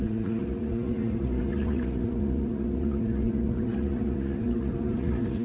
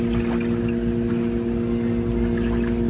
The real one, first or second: second